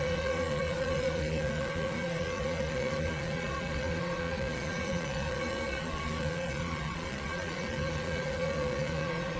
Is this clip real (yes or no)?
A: no